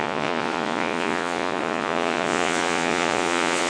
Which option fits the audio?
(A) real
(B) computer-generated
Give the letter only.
B